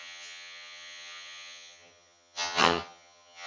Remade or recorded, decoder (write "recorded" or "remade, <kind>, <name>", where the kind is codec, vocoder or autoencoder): remade, vocoder, HiFi-GAN